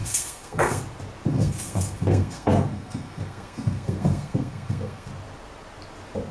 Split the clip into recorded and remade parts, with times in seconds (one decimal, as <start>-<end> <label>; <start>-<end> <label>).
0.0-0.8 remade; 0.8-1.3 recorded; 1.3-5.1 remade; 5.1-6.3 recorded